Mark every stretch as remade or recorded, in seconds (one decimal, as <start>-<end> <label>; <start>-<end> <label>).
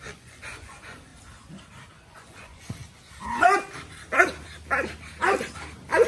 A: 0.0-1.1 remade; 1.1-1.9 recorded; 1.9-2.8 remade; 2.8-6.1 recorded